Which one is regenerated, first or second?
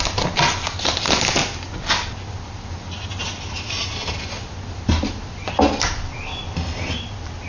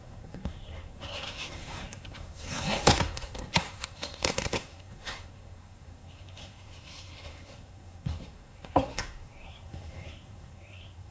second